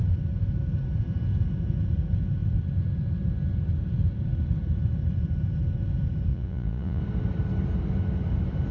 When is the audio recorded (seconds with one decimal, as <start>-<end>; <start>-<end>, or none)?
0.0-6.3; 7.0-8.7